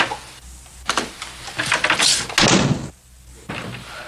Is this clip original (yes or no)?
yes